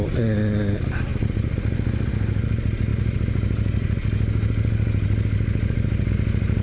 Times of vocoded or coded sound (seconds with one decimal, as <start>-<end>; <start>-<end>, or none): none